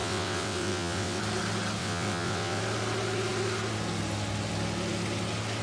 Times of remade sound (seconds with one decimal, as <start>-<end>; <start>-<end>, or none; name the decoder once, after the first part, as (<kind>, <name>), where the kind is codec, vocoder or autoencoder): 0.0-1.2 (vocoder, WaveNeXt); 1.8-2.6